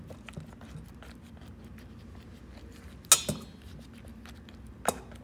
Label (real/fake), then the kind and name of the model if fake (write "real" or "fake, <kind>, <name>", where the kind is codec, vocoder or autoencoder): real